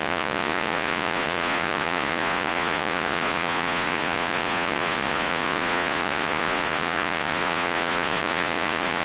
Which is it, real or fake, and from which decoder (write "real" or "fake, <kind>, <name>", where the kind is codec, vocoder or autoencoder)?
fake, vocoder, Vocos